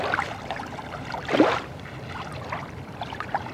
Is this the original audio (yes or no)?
no